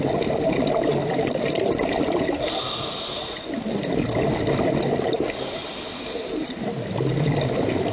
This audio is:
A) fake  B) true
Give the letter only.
B